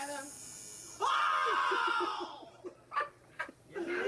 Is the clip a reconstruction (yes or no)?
no